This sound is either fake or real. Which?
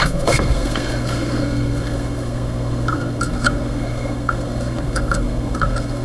fake